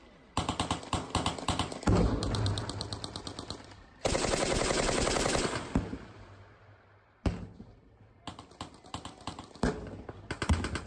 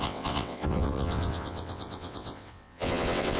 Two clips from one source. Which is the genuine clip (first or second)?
first